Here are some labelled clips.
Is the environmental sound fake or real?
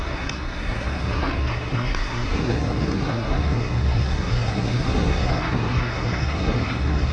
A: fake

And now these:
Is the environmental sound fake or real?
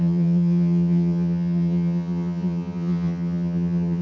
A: fake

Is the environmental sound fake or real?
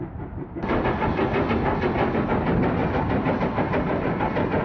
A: real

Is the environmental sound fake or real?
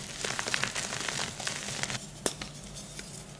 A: real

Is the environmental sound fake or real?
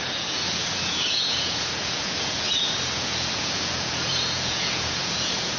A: fake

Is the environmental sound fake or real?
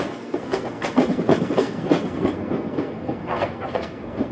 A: fake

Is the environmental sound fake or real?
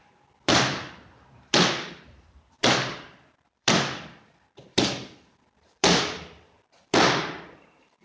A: fake